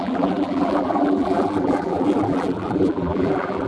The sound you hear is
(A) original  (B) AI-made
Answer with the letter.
B